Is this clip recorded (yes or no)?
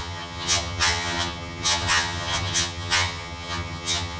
no